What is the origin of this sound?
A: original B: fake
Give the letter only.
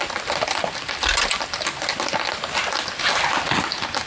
A